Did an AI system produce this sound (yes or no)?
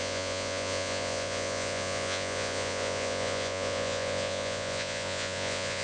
yes